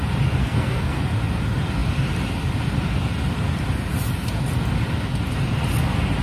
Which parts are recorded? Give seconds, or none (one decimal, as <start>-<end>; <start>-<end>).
0.0-0.4; 1.0-6.2